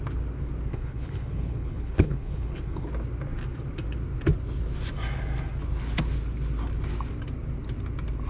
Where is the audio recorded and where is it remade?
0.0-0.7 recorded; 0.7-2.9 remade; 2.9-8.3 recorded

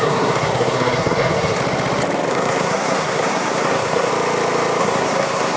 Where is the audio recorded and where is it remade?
0.0-1.6 remade; 1.6-2.3 recorded; 2.3-4.1 remade; 4.1-4.8 recorded; 4.8-5.6 remade

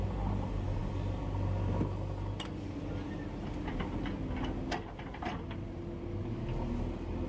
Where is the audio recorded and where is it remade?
0.0-7.3 recorded

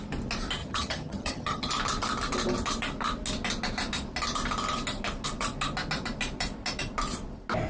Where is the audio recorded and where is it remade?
0.0-0.6 recorded; 0.6-1.7 remade; 1.7-7.7 recorded